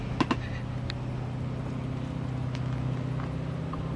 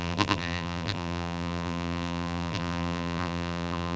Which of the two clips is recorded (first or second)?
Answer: first